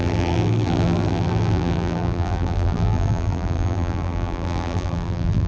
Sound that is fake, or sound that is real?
fake